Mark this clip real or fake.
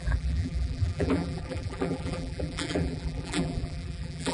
fake